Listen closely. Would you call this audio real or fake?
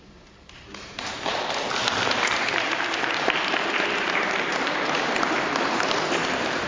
fake